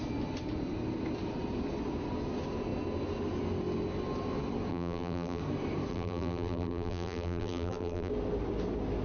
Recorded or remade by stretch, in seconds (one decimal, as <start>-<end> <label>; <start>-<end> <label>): 0.0-4.7 recorded; 4.7-5.4 remade; 5.4-5.9 recorded; 5.9-8.1 remade; 8.1-9.0 recorded